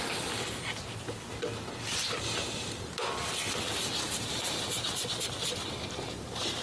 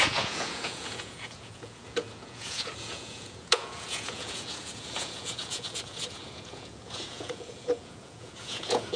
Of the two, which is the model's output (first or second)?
second